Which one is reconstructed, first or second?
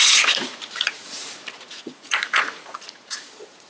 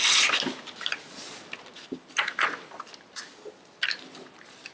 first